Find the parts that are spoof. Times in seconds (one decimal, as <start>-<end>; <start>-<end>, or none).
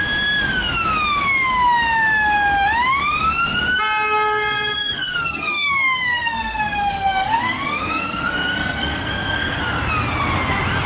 4.8-9.6